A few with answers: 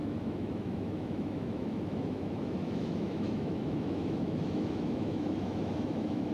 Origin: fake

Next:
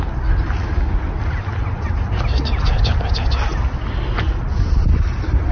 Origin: real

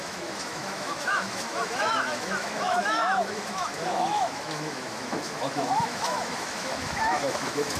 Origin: fake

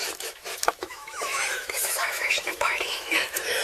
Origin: fake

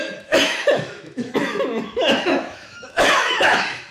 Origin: fake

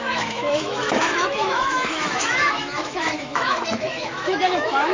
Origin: fake